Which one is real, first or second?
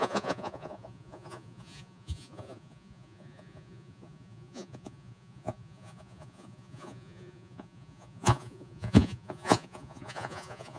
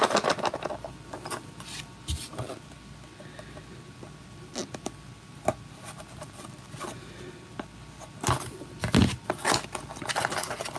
second